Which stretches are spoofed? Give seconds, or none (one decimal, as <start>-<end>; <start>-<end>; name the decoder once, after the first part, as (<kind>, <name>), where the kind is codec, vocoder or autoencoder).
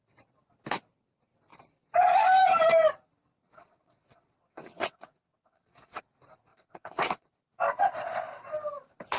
3.4-6.0 (vocoder, WaveNeXt); 6.5-7.3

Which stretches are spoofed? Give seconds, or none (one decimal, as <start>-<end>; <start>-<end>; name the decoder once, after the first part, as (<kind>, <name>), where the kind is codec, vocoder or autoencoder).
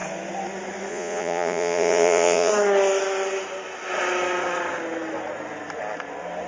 0.9-2.5 (vocoder, Vocos)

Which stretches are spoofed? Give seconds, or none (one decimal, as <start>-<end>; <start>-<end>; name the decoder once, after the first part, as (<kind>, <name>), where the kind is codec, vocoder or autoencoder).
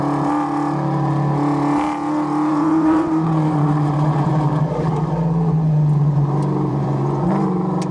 2.5-4.3 (vocoder, Vocos); 6.7-7.3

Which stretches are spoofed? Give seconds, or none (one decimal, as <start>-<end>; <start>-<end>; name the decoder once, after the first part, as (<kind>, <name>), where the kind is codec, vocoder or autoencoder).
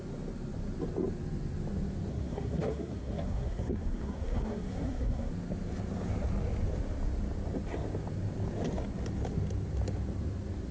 2.1-5.3 (codec, SNAC)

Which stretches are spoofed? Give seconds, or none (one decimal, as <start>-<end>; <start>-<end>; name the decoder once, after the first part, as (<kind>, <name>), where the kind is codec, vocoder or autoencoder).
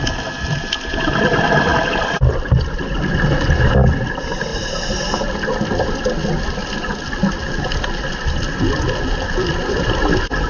none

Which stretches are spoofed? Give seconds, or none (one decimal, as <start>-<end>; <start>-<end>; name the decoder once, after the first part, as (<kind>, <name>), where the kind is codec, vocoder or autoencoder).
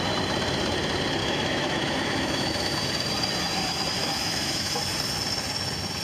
1.2-2.5 (autoencoder, DAC-VAE); 4.0-4.8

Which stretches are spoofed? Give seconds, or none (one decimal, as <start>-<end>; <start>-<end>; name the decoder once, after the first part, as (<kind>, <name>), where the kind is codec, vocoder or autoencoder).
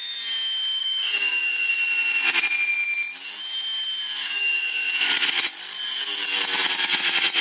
0.8-1.7 (codec, DAC); 4.2-4.9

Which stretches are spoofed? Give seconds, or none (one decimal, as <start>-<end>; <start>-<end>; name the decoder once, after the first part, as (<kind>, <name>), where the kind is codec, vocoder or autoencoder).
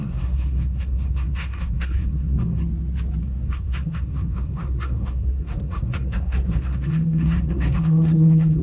0.0-2.6 (codec, SNAC); 3.2-8.6